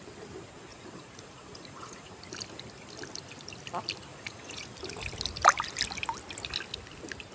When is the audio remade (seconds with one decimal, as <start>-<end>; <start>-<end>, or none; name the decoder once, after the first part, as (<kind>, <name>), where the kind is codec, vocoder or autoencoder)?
0.7-2.1 (vocoder, Vocos); 4.1-4.6